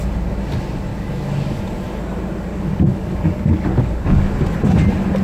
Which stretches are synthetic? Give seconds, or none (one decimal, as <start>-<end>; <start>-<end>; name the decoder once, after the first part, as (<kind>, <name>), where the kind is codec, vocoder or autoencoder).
0.9-1.6 (codec, DAC); 2.5-4.3